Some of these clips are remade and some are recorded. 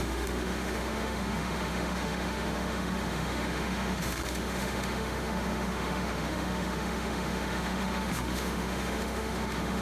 remade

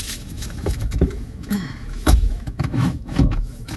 remade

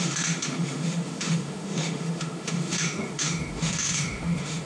remade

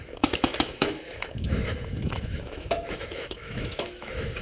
remade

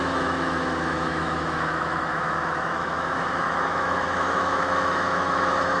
remade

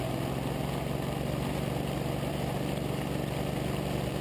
recorded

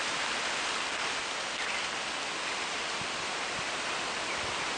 recorded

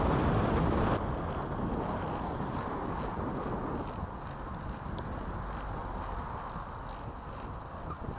recorded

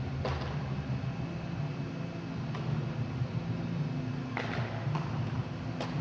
recorded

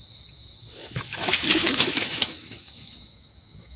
remade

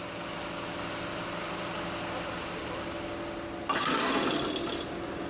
recorded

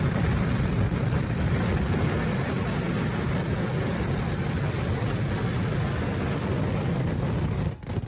recorded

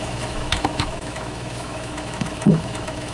remade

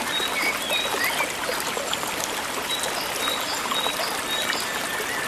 recorded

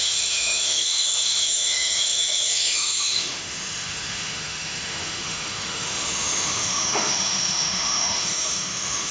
remade